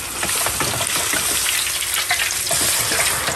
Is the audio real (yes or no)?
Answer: yes